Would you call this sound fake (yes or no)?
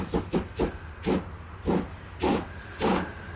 no